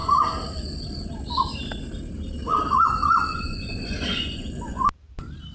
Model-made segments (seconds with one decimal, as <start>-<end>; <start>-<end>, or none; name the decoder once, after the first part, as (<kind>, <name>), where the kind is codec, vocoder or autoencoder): 3.3-4.8 (vocoder, Vocos)